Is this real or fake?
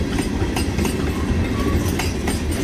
real